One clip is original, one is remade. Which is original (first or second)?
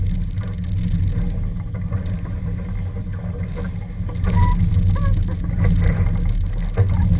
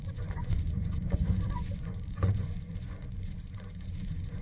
first